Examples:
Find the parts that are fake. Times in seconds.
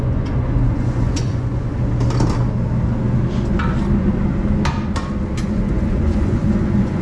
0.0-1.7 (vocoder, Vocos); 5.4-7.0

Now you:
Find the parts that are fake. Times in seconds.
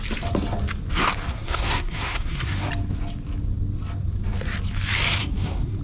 1.3-2.7 (codec, SNAC); 5.2-5.8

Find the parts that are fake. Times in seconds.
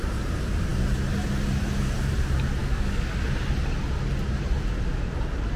2.6-3.1 (codec, DAC)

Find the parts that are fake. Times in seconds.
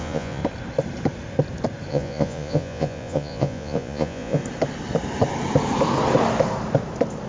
0.0-0.4 (vocoder, Vocos); 1.9-4.4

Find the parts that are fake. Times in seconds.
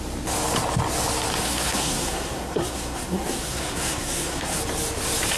1.4-4.6 (codec, SNAC)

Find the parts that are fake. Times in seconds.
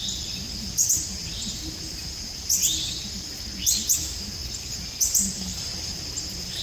none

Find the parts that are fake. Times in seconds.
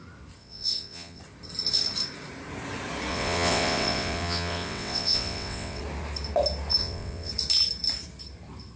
0.4-1.2 (vocoder, WaveNeXt); 3.1-5.8; 6.8-7.3